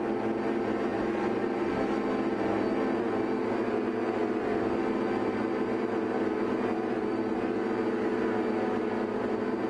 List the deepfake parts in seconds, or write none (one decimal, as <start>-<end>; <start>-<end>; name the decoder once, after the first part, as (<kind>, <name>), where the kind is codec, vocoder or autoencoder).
none